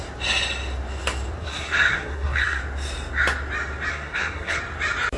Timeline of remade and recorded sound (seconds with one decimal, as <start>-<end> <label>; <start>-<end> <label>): 0.0-1.4 recorded; 1.4-2.6 remade; 2.6-3.9 recorded; 3.9-4.6 remade; 4.6-5.2 recorded